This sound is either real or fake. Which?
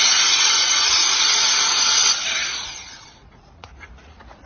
fake